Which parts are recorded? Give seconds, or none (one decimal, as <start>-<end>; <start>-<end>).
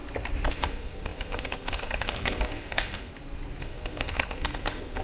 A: 0.0-0.5; 3.1-3.6